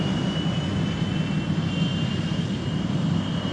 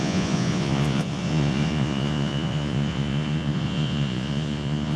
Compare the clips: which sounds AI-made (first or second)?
second